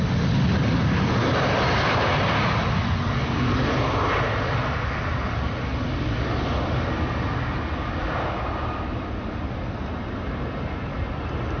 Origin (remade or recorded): recorded